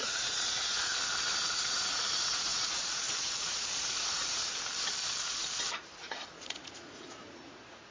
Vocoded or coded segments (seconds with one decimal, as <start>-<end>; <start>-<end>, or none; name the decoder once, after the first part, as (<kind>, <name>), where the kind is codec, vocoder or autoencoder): 0.0-0.9 (vocoder, Vocos); 1.4-4.5; 5.2-7.9